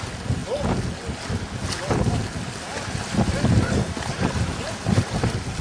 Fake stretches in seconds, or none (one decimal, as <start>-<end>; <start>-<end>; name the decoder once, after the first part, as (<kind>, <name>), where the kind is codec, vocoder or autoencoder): none

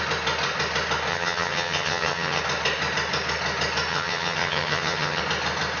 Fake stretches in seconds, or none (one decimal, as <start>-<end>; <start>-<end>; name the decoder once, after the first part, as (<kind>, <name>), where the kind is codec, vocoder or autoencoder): 1.1-2.4 (vocoder, HiFi-GAN); 3.9-5.2

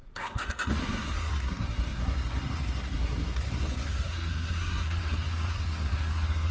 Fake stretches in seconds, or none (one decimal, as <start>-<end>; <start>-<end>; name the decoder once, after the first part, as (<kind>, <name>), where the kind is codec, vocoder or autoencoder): 0.0-6.5 (codec, SNAC)